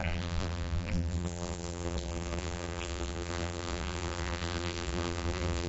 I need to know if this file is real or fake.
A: fake